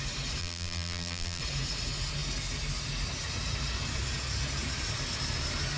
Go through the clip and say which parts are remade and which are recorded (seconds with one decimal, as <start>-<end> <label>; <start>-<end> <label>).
0.0-0.4 recorded; 0.4-1.4 remade; 1.4-5.8 recorded